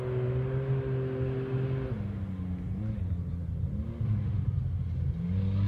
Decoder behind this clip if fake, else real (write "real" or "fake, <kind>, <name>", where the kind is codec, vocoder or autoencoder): real